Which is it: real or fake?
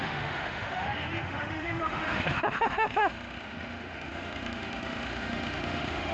fake